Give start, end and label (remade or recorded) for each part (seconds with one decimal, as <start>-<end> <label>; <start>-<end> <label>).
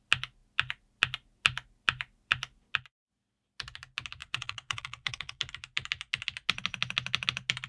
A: 0.0-4.2 recorded; 4.2-5.4 remade; 5.4-7.7 recorded